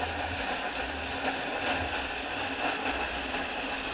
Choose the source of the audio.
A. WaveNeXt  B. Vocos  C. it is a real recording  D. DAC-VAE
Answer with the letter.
C